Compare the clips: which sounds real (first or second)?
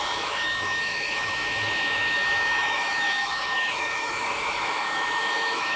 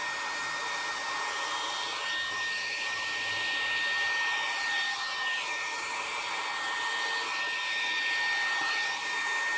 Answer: second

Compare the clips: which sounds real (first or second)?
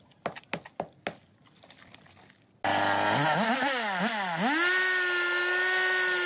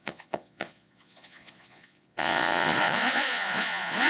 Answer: first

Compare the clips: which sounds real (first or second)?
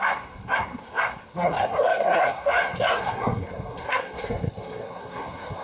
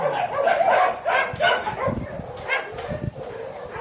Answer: second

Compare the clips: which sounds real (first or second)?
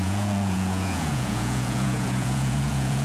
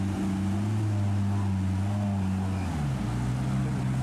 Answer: second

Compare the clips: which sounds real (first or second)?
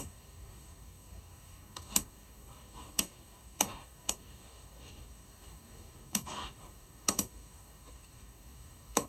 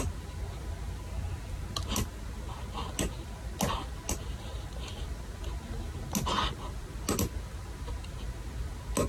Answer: second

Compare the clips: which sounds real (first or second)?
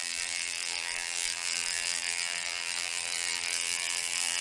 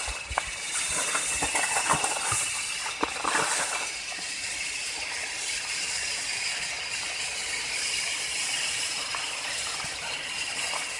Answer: second